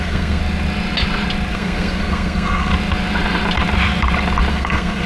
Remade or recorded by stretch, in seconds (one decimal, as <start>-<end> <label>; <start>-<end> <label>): 0.0-0.4 remade; 0.4-1.5 recorded; 1.5-2.7 remade; 2.7-4.5 recorded; 4.5-5.1 remade